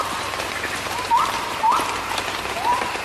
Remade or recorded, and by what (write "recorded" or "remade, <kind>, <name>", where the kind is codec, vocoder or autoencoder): recorded